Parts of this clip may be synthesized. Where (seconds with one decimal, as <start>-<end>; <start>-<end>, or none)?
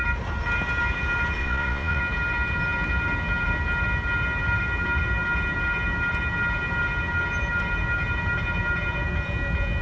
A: 1.4-2.0